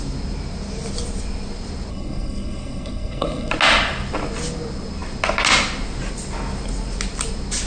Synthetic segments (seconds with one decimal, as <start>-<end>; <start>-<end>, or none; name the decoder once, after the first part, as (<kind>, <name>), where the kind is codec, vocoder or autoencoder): 1.9-3.5 (codec, SNAC)